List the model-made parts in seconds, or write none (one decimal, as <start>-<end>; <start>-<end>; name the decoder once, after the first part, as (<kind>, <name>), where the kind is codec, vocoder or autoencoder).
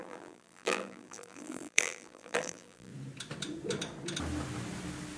0.0-2.9 (vocoder, BigVGAN v2)